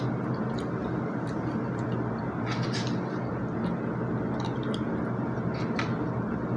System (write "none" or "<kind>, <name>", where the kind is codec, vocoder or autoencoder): none